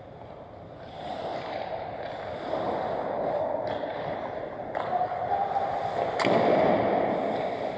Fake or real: real